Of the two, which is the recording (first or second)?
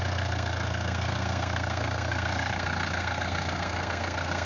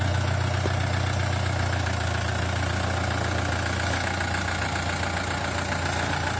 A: second